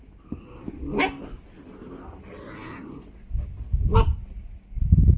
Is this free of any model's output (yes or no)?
yes